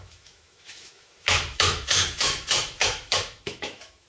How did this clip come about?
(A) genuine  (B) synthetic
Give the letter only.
B